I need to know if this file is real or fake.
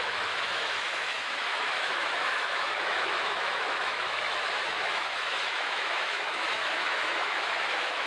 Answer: fake